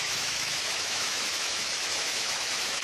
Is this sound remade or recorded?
remade